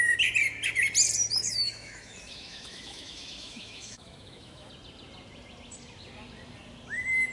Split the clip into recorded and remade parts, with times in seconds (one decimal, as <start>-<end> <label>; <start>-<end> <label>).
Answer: 0.0-1.4 recorded; 1.4-4.7 remade; 4.7-7.3 recorded

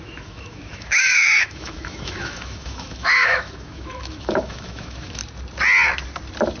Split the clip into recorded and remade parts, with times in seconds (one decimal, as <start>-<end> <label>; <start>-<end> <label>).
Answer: 0.0-5.2 remade; 5.2-6.6 recorded

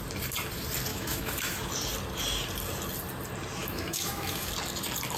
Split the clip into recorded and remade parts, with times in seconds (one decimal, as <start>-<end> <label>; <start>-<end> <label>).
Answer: 0.0-0.9 recorded; 0.9-1.7 remade; 1.7-3.6 recorded; 3.6-4.5 remade; 4.5-5.2 recorded

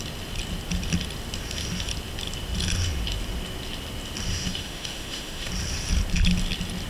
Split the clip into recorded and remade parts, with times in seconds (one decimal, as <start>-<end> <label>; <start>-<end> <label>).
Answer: 0.0-4.3 recorded; 4.3-5.5 remade; 5.5-6.9 recorded